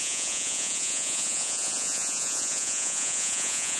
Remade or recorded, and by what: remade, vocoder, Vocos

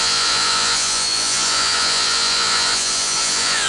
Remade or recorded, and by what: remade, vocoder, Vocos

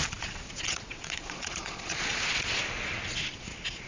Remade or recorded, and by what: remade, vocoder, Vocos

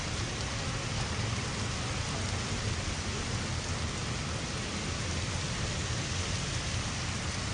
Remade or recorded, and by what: recorded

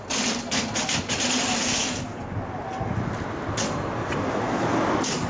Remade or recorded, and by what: recorded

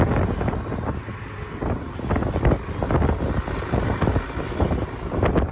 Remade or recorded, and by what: recorded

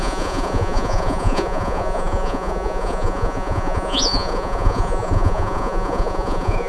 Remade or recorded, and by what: remade, vocoder, Vocos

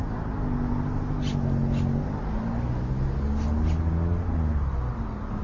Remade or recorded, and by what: recorded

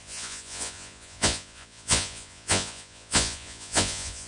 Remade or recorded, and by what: remade, vocoder, Vocos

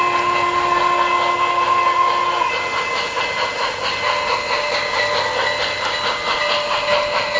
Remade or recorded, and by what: recorded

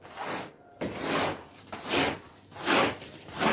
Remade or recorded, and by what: recorded